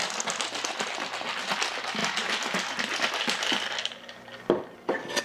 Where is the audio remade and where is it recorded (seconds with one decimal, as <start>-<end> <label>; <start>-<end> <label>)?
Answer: 0.0-5.2 recorded